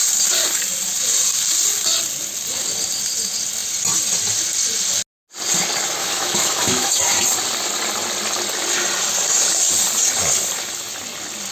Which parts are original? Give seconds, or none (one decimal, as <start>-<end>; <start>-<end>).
0.0-6.0; 7.0-11.5